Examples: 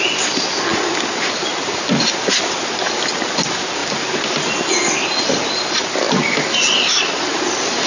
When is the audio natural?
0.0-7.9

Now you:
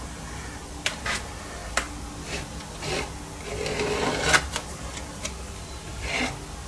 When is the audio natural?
0.0-6.7

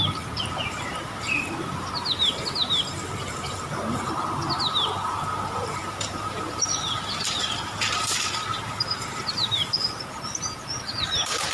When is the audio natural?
0.0-5.8; 10.0-11.5

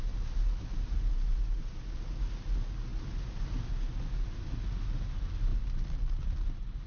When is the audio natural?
0.0-6.9

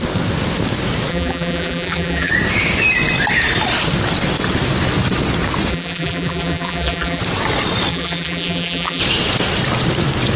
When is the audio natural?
0.0-1.1; 2.3-5.7; 7.2-7.9; 9.0-10.4

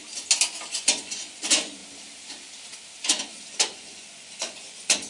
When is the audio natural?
0.0-0.7; 1.8-3.2

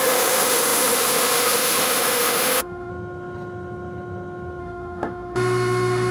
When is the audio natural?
2.9-4.6